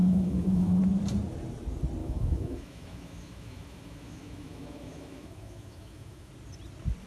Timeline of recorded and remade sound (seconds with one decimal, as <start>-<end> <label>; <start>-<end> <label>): 0.0-0.8 remade; 0.8-2.0 recorded; 2.0-6.3 remade; 6.3-7.1 recorded